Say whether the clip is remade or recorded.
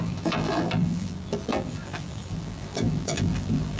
remade